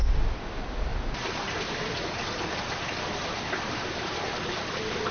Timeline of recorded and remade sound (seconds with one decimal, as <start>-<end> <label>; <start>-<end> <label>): 0.0-5.1 recorded